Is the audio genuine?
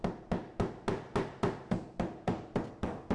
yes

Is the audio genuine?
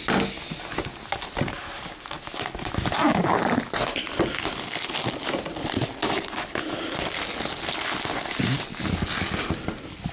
yes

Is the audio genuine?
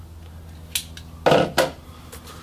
yes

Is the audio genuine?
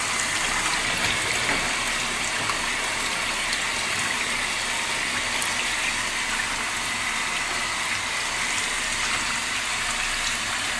yes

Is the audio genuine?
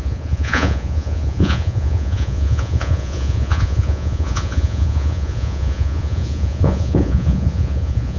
no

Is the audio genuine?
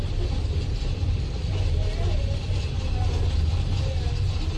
yes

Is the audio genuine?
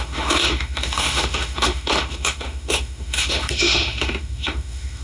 no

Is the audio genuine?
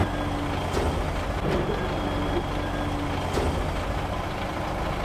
yes